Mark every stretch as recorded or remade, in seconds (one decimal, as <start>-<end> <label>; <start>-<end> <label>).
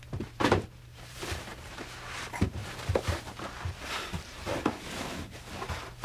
0.0-6.0 remade